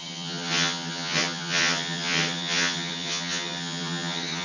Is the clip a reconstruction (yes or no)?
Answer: yes